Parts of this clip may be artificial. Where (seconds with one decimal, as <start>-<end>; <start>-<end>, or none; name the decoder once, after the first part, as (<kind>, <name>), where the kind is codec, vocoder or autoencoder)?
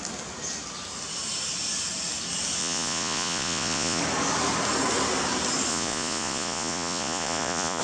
2.6-4.0 (vocoder, Vocos); 5.7-7.8